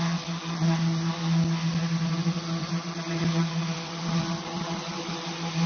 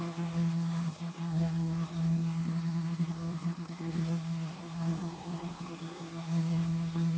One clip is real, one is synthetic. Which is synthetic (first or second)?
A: second